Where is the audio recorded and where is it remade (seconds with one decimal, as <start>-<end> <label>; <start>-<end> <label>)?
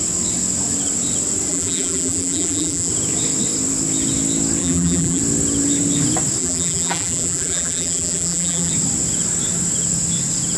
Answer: 0.0-1.5 recorded; 1.5-2.9 remade; 2.9-4.6 recorded; 4.6-5.2 remade; 5.2-6.4 recorded; 6.4-8.7 remade; 8.7-10.6 recorded